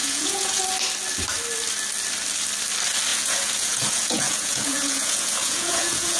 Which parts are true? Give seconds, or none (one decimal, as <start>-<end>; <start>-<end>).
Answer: 0.6-3.1